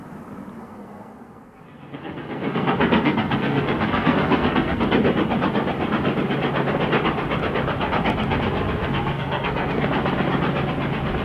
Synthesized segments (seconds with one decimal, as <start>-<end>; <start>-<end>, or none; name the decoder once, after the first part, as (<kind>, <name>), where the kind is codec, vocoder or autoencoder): 0.6-4.8 (codec, SNAC); 8.8-9.8